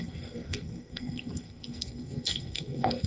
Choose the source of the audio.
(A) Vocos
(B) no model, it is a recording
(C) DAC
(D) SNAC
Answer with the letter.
D